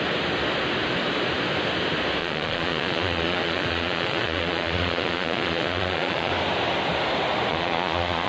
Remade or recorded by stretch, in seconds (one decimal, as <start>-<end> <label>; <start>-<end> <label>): 0.0-2.2 recorded; 2.2-6.3 remade; 6.3-7.5 recorded; 7.5-8.3 remade